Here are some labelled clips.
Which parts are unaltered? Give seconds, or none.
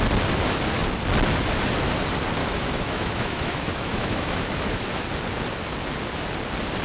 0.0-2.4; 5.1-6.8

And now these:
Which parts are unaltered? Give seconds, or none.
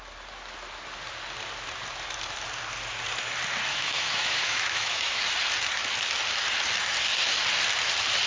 0.0-3.7; 5.2-8.3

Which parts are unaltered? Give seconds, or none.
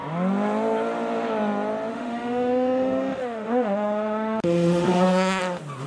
0.0-1.9; 5.4-5.9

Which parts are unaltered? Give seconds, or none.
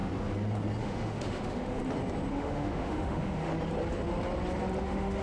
0.0-0.8; 1.8-2.3; 3.5-4.8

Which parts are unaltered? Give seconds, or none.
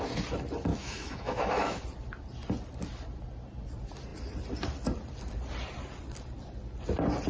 0.0-0.7; 1.8-7.3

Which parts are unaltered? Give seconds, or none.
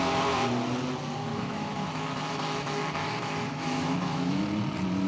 0.0-1.3; 4.4-5.1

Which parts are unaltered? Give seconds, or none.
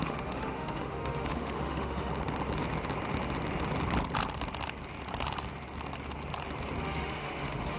2.1-6.8